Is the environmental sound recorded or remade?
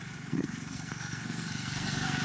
remade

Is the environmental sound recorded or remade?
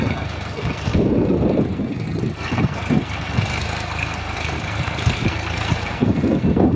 remade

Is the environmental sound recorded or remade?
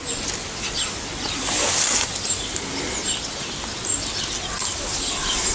recorded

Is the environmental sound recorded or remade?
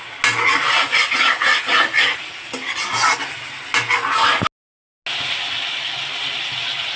recorded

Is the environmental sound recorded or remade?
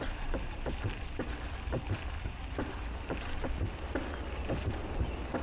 recorded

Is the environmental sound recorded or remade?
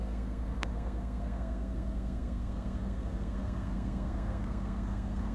remade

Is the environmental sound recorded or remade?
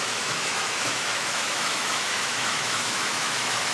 remade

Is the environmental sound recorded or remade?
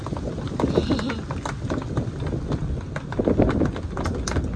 recorded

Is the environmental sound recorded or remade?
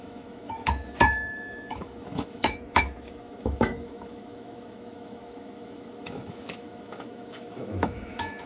remade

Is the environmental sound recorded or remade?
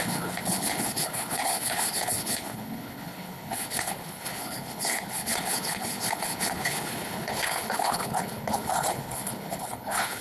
remade